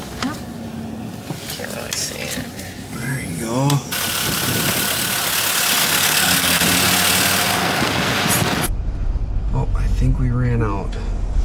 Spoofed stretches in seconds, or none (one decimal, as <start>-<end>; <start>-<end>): 5.8-6.6; 7.5-8.2